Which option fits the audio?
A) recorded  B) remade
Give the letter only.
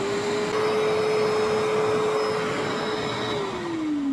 A